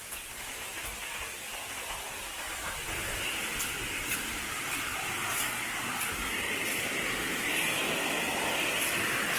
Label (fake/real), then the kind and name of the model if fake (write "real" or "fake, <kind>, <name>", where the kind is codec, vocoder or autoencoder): real